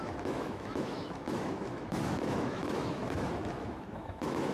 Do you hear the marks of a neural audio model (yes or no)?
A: yes